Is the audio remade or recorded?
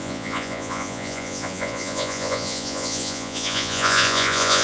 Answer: remade